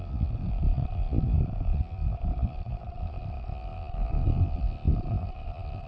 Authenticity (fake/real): real